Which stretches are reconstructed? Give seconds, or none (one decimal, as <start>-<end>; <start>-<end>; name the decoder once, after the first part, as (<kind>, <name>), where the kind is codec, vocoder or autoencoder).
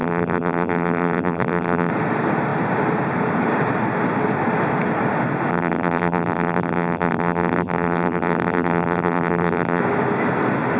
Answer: 0.0-1.9 (vocoder, BigVGAN v2); 5.5-9.8